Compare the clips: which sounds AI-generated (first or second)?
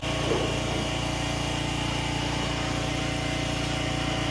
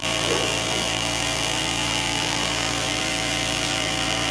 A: second